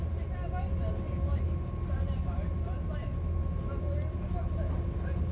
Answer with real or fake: real